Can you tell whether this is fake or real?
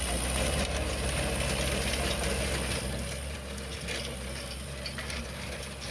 real